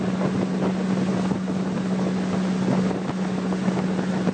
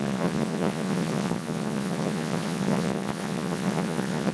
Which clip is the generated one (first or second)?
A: second